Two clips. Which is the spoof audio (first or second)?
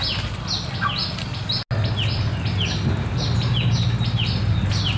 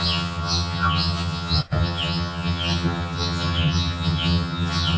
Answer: second